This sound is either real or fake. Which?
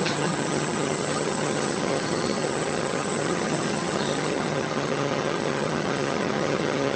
fake